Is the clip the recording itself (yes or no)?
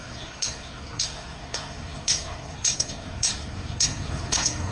no